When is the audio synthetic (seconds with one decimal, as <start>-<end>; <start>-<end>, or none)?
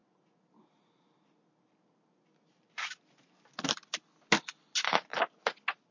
none